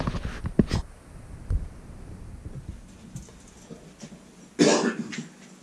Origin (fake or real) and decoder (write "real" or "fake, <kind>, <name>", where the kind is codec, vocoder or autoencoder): real